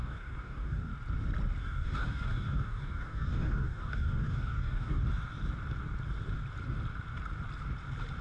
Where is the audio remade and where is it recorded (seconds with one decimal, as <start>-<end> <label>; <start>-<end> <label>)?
0.0-0.9 remade; 0.9-1.6 recorded; 1.6-5.0 remade; 5.0-8.2 recorded